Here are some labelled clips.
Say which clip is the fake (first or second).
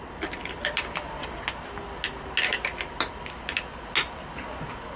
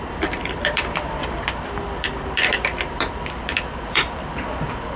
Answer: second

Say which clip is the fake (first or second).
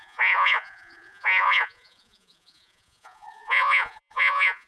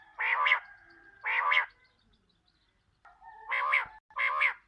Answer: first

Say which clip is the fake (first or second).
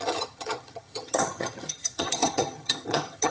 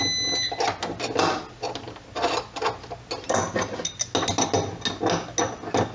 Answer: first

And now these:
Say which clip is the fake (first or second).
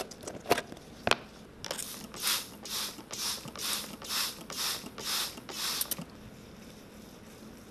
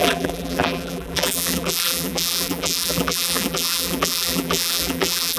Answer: second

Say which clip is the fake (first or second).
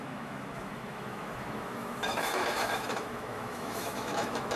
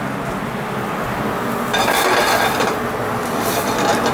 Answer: first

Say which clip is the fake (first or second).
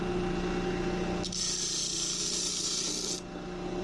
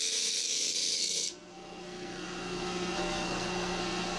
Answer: second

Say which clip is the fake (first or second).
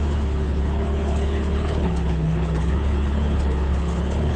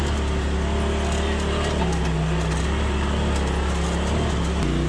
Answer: first